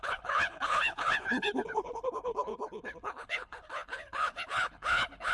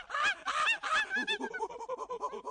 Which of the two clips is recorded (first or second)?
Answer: second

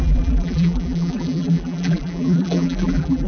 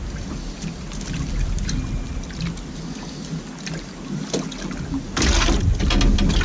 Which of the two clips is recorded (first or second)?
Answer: second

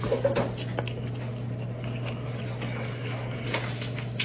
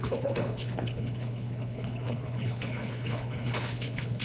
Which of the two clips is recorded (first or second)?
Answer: first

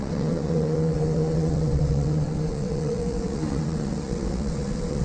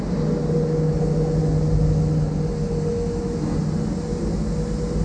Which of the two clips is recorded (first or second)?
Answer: second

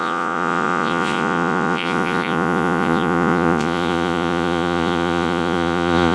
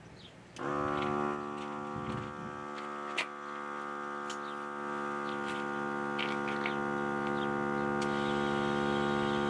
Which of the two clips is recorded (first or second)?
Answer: second